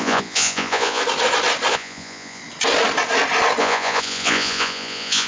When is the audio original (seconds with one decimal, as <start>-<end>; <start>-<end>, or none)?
1.0-1.7; 2.4-3.6